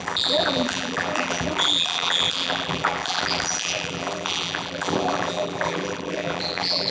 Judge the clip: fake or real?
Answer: fake